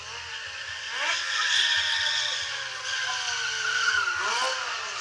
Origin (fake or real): real